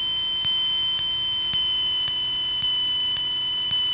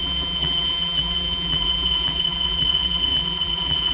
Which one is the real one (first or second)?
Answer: first